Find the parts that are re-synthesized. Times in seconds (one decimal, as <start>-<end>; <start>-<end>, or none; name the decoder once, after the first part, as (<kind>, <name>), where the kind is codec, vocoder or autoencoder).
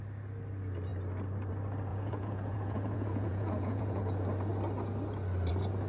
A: 1.9-4.0 (vocoder, Vocos)